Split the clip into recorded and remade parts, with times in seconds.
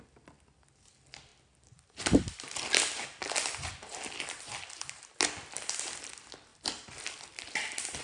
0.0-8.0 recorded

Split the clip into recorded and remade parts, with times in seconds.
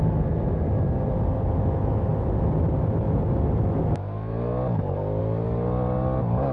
0.0-6.5 recorded